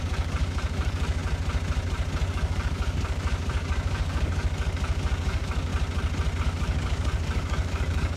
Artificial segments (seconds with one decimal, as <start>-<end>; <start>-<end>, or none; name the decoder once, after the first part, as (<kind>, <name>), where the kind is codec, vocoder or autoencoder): 0.0-1.2 (codec, DAC); 2.3-5.7; 6.4-8.2